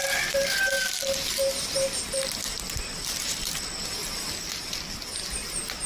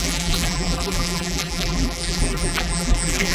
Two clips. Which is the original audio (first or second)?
first